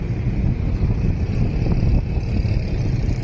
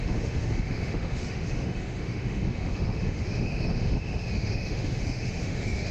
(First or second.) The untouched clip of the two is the first